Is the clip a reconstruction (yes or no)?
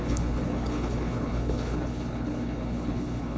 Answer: yes